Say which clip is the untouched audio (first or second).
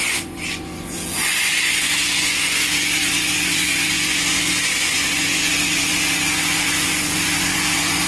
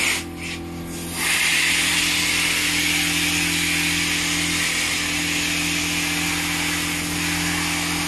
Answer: second